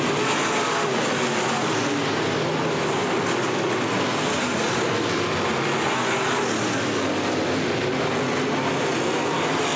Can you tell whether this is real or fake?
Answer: real